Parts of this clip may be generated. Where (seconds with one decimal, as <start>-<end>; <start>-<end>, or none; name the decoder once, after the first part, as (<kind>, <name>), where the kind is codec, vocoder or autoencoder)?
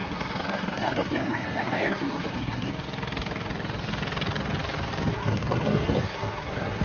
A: 0.0-2.7 (codec, SNAC); 5.1-6.8